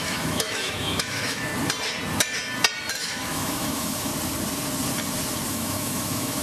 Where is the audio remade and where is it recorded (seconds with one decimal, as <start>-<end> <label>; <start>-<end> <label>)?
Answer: 0.0-1.5 remade; 1.5-3.0 recorded; 3.0-4.1 remade; 4.1-5.5 recorded; 5.5-6.4 remade